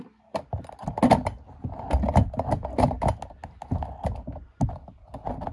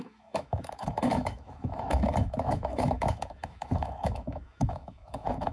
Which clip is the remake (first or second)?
second